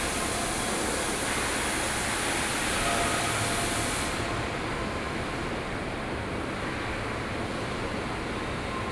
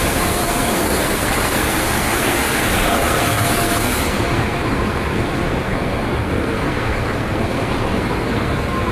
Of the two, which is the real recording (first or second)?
first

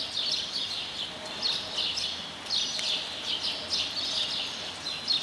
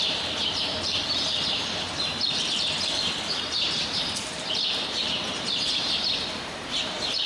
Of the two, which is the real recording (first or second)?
first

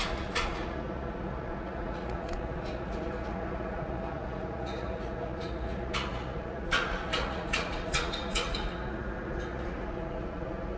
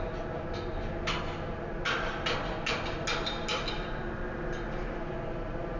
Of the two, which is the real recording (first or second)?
second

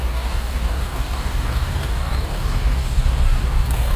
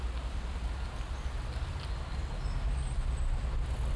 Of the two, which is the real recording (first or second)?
second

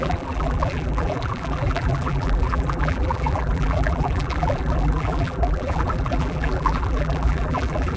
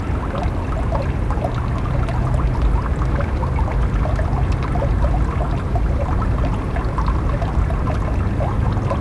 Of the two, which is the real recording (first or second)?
second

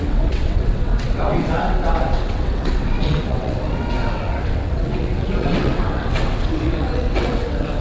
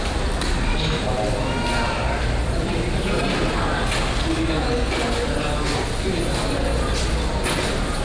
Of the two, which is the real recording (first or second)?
second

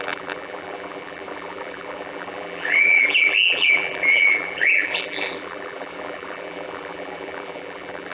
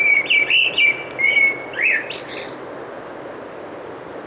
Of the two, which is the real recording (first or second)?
second